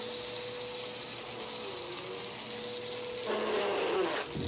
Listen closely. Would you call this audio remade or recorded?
recorded